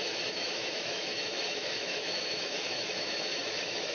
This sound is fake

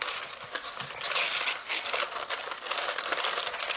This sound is real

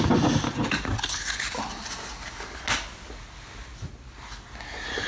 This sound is real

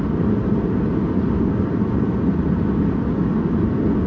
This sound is real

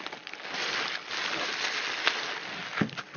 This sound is real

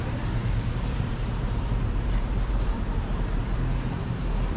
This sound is fake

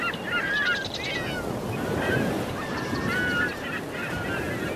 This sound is real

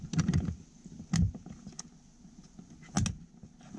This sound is real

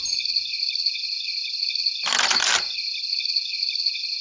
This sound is real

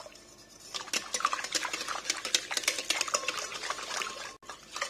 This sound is real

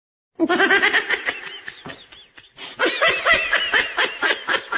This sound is real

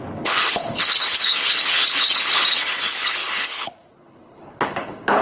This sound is fake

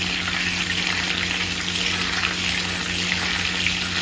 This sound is real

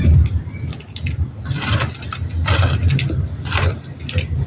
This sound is real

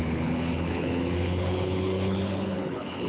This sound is fake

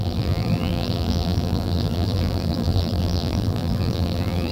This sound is fake